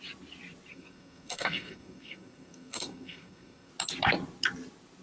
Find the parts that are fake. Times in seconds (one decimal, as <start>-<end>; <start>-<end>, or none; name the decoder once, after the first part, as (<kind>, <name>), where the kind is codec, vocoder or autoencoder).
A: 0.7-3.7 (codec, SNAC)